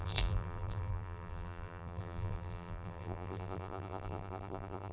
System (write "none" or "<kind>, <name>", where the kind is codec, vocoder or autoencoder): vocoder, BigVGAN v2